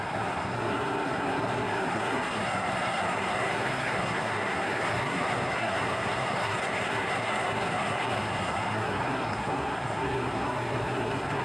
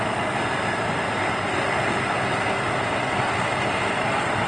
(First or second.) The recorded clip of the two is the second